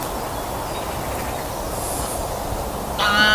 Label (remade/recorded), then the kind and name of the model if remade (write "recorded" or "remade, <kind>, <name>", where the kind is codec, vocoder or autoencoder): recorded